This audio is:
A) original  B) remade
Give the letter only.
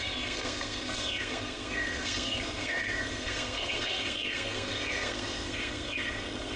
B